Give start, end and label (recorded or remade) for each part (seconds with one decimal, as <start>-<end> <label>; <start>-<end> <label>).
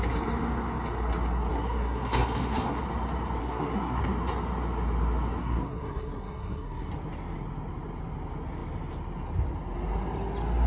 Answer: 0.0-1.5 recorded; 1.5-2.8 remade; 2.8-3.4 recorded; 3.4-4.0 remade; 4.0-5.4 recorded; 5.4-6.9 remade; 6.9-10.7 recorded